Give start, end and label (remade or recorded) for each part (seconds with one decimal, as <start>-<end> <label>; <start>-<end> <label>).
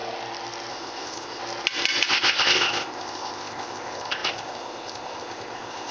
0.0-0.7 recorded; 0.7-1.4 remade; 1.4-2.1 recorded; 2.1-5.9 remade